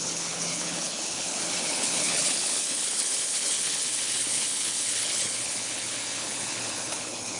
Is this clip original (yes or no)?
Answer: no